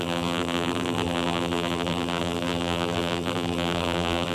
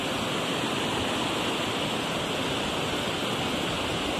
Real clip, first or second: second